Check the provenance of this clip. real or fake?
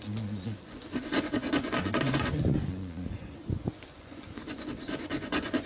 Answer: fake